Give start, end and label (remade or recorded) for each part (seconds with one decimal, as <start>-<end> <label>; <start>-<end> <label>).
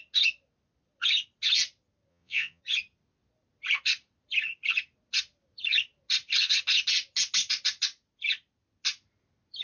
0.0-2.1 recorded; 2.1-2.6 remade; 2.6-9.6 recorded